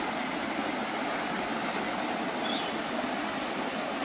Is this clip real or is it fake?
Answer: real